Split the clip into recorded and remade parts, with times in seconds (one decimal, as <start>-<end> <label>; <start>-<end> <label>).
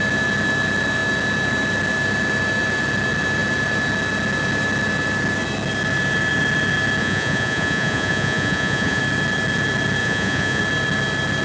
0.0-7.0 recorded; 7.0-9.0 remade; 9.0-10.0 recorded; 10.0-10.6 remade; 10.6-11.4 recorded